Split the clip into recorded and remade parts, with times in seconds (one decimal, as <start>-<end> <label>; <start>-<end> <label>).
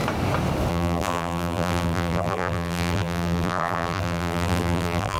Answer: 0.0-0.7 recorded; 0.7-5.2 remade